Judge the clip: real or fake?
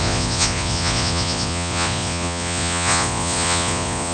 fake